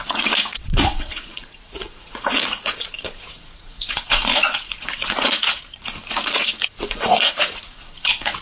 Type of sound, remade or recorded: remade